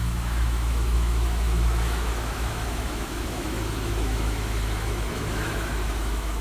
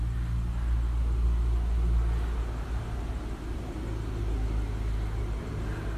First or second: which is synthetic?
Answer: first